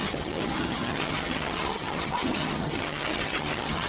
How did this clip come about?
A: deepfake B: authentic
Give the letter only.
A